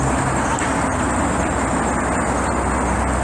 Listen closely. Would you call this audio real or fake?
real